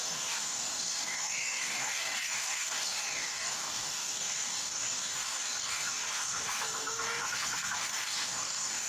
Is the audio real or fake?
fake